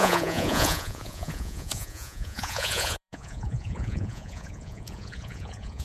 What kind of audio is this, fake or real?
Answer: fake